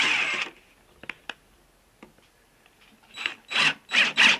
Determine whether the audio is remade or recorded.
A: recorded